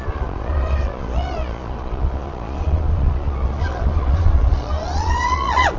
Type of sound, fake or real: fake